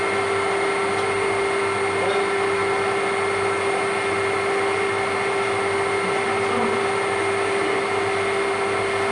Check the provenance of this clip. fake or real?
real